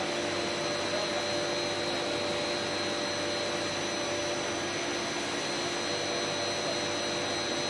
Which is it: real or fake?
real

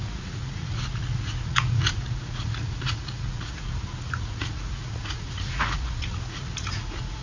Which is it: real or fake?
fake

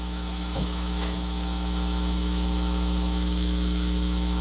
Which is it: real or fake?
fake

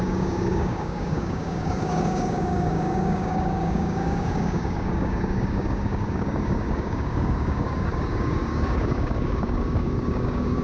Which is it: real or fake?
fake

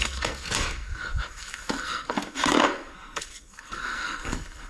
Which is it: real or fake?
fake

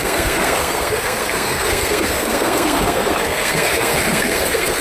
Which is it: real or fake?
fake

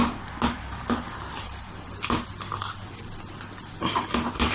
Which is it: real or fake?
real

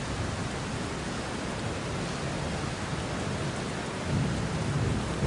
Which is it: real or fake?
real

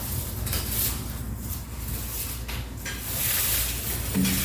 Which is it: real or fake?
real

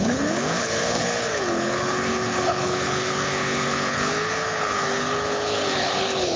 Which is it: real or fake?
fake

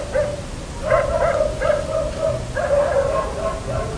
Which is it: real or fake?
real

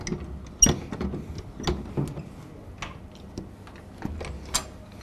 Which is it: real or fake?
real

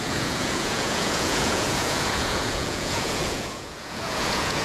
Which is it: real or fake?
fake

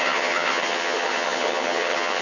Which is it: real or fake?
fake